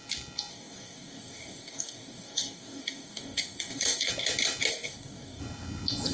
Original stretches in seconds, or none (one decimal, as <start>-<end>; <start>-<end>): 0.0-0.5; 4.1-4.7; 5.4-6.1